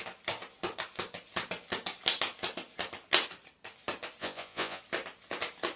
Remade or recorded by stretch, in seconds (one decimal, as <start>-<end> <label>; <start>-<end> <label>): 0.0-4.2 recorded; 4.2-4.8 remade; 4.8-5.8 recorded